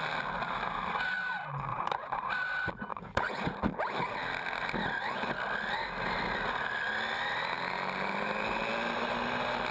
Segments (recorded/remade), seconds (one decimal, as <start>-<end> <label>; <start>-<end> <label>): 0.0-1.7 recorded; 1.7-2.3 remade; 2.3-2.9 recorded; 2.9-3.6 remade; 3.6-9.7 recorded